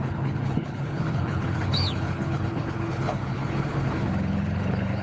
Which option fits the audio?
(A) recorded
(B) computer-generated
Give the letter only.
B